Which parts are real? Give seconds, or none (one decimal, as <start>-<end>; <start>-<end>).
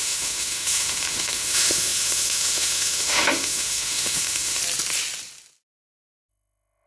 4.6-6.3